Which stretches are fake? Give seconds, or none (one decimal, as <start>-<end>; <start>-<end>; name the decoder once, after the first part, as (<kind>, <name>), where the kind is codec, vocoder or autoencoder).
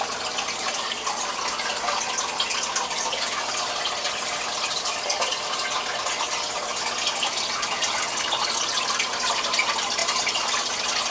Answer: none